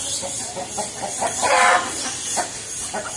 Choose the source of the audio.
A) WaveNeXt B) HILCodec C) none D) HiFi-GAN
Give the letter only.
C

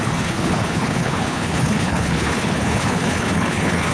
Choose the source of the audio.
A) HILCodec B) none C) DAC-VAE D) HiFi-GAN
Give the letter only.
A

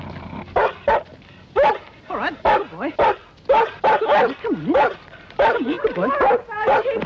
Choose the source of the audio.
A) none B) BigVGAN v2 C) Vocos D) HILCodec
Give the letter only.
A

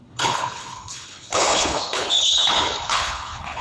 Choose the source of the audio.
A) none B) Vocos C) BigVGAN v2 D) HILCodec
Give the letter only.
D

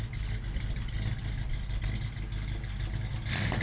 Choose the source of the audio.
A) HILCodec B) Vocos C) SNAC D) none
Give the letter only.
D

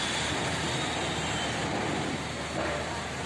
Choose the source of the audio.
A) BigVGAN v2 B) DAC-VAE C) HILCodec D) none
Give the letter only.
D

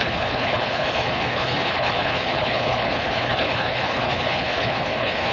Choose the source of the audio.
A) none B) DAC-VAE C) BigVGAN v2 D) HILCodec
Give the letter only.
D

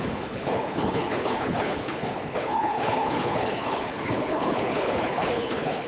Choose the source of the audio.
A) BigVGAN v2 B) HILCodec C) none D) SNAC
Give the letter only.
B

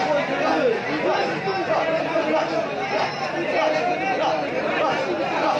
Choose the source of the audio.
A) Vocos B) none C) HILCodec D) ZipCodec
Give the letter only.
B